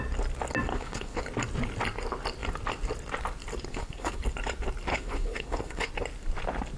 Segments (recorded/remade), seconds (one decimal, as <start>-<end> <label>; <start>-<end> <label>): 0.0-0.7 recorded; 0.7-1.2 remade; 1.2-3.7 recorded; 3.7-4.2 remade; 4.2-4.9 recorded; 4.9-5.9 remade; 5.9-6.8 recorded